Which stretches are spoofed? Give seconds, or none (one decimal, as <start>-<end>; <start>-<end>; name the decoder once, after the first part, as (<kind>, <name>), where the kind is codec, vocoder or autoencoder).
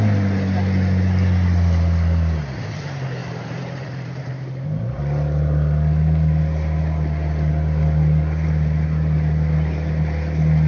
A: 3.2-5.0 (vocoder, BigVGAN v2)